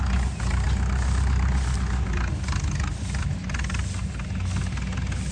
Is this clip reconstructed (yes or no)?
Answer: no